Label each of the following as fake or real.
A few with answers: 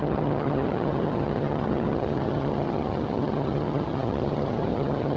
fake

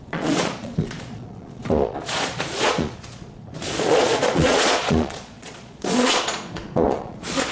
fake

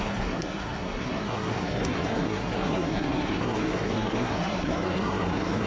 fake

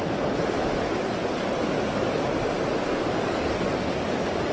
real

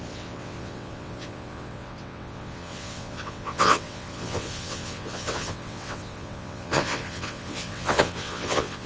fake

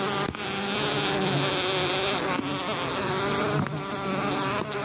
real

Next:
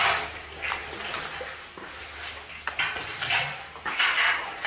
real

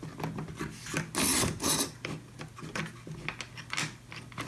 real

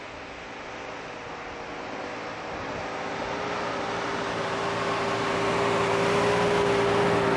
real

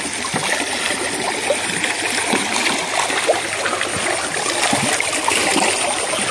real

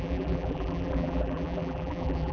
fake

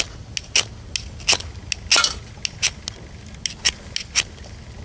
real